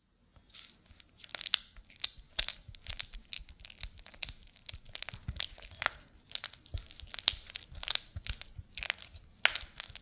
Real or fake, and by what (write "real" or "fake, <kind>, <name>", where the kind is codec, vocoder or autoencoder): real